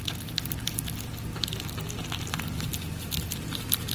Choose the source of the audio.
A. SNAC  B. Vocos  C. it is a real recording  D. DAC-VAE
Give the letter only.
C